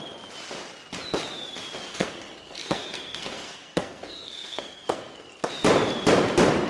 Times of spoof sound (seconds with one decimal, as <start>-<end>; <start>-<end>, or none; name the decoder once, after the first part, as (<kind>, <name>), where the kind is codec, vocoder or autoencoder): 1.9-5.5 (codec, SNAC)

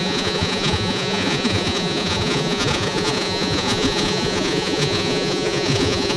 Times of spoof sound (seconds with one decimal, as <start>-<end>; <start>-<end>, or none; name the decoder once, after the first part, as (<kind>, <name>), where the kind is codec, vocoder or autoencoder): 0.0-6.2 (vocoder, Vocos)

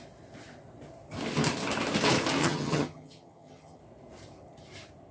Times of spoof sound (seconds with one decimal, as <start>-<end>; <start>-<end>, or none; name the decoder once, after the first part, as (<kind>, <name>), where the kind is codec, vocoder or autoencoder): 2.4-3.8 (vocoder, HiFi-GAN)

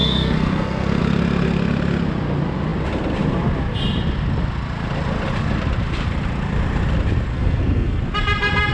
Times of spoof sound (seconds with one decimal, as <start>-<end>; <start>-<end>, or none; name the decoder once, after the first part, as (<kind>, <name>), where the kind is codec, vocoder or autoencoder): 0.0-1.0 (codec, SNAC); 7.3-8.0

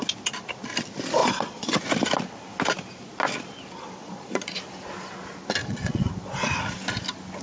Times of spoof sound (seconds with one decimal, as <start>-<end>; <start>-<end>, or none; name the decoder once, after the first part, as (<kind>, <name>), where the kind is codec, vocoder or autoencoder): 1.2-1.9 (vocoder, Vocos); 4.0-4.6; 5.6-6.1

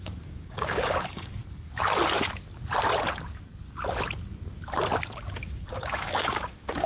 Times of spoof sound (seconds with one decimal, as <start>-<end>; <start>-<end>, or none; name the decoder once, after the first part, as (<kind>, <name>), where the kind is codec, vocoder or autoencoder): 0.0-1.4 (codec, DAC); 5.4-6.9